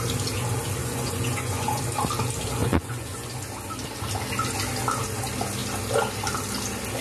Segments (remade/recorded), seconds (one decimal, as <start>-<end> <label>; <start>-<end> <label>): 0.0-0.8 recorded; 0.8-1.8 remade; 1.8-2.6 recorded; 2.6-3.3 remade; 3.3-7.0 recorded